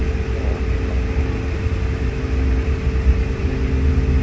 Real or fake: real